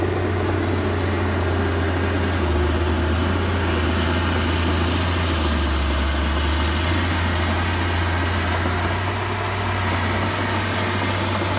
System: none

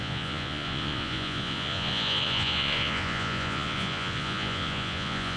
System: vocoder, Vocos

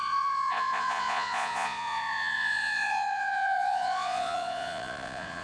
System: vocoder, Vocos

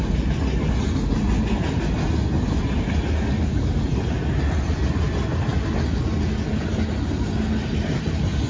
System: none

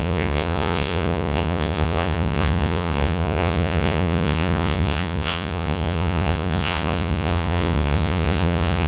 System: vocoder, Vocos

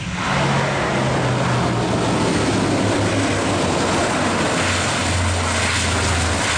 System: none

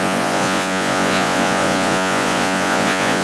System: vocoder, Vocos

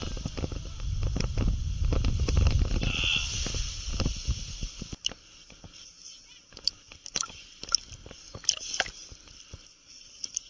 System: none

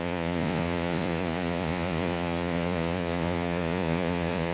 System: vocoder, Vocos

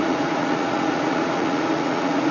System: vocoder, Vocos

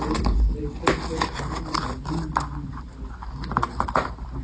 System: none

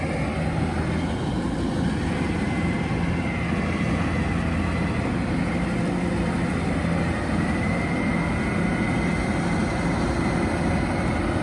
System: none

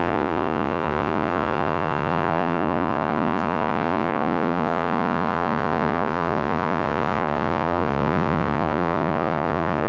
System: vocoder, Vocos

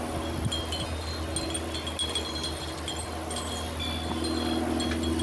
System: none